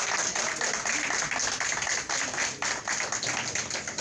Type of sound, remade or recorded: recorded